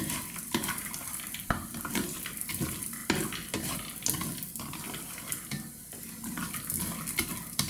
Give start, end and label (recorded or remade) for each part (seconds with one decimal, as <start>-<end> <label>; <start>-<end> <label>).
0.0-3.0 remade; 3.0-7.3 recorded; 7.3-7.7 remade